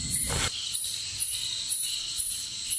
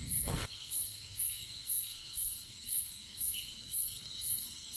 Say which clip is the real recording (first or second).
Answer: first